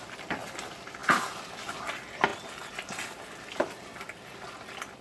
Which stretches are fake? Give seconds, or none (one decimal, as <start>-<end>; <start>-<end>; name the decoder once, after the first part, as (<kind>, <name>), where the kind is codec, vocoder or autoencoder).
none